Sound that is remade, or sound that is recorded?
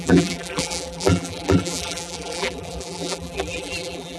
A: remade